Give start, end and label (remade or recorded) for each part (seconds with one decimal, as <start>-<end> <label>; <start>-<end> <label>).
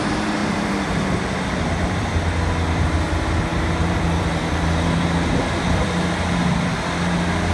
0.0-0.4 recorded; 0.4-2.1 remade; 2.1-3.5 recorded; 3.5-4.4 remade; 4.4-7.5 recorded